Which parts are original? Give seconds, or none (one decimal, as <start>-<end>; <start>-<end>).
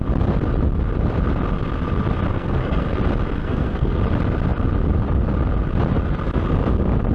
0.0-2.3; 3.0-3.4; 4.0-7.1